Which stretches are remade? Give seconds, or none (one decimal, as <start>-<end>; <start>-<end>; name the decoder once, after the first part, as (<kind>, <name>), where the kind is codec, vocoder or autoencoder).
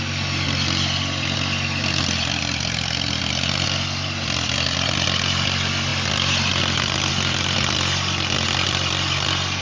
none